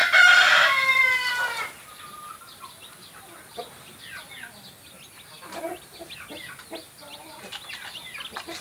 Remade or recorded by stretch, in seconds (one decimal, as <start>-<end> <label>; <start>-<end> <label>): 0.0-3.6 remade; 3.6-8.6 recorded